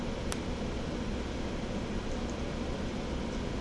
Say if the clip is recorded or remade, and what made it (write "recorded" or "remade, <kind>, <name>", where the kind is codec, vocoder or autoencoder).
recorded